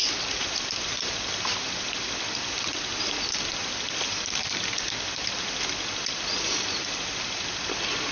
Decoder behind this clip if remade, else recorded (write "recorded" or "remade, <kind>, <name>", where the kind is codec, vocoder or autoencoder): remade, vocoder, BigVGAN v2